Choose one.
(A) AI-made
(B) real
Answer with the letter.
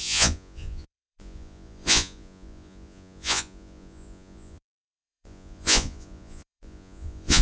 A